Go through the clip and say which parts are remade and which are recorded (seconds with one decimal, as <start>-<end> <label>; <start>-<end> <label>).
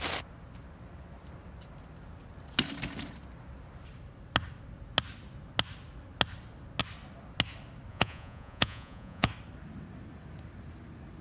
0.0-7.9 recorded; 7.9-9.3 remade; 9.3-11.2 recorded